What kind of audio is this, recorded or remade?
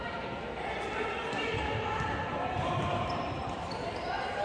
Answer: remade